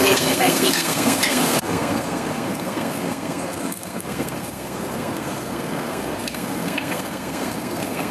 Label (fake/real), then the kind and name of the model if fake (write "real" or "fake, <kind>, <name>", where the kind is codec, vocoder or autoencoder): fake, codec, SNAC